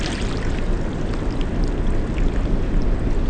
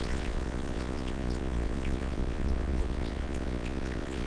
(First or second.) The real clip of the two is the first